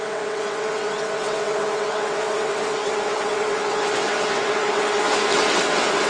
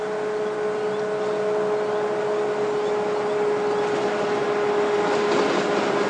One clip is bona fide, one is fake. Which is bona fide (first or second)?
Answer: second